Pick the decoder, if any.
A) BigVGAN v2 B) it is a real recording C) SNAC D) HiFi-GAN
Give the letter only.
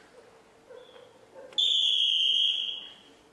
B